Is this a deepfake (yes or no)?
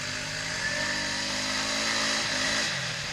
no